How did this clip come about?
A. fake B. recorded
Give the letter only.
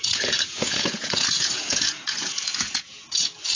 A